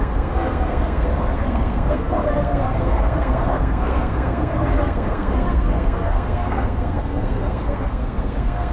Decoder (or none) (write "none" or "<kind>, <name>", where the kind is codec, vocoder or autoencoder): codec, SNAC